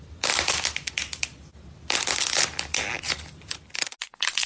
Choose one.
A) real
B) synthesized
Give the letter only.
A